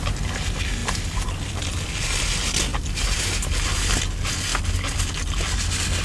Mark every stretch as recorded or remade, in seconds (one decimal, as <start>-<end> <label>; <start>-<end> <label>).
0.0-0.8 recorded; 0.8-2.2 remade; 2.2-2.7 recorded; 2.7-3.9 remade; 3.9-6.0 recorded